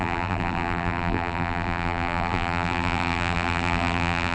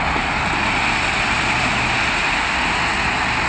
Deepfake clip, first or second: first